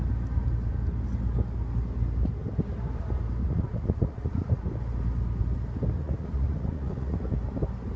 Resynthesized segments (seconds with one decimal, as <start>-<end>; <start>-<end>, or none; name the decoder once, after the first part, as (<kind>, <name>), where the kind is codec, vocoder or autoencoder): 3.4-4.6 (vocoder, Vocos); 6.0-7.3